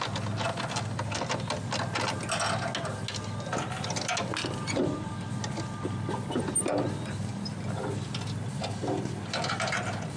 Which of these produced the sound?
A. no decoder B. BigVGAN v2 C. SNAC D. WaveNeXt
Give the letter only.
A